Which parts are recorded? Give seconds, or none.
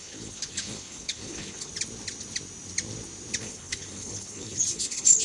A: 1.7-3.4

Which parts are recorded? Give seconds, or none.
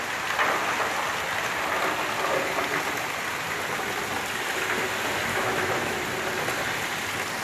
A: 0.0-5.3; 6.0-7.4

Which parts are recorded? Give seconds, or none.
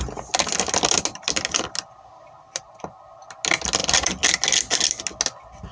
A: 0.0-5.7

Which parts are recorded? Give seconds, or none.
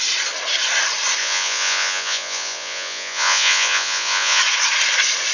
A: 0.0-1.2; 4.4-5.3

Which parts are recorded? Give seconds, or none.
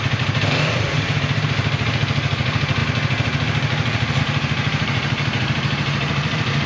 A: 2.8-4.2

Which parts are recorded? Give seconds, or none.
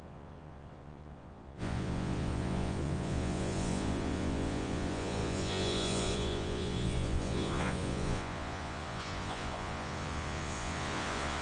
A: none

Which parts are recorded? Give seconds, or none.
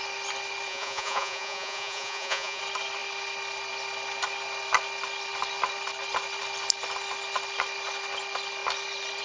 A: 0.0-0.7; 2.6-9.2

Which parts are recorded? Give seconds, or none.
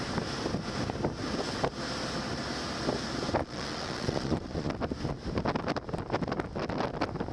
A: 0.0-3.4; 4.7-7.3